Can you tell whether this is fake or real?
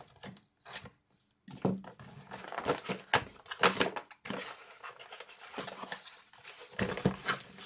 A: real